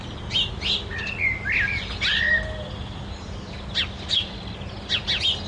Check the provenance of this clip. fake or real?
real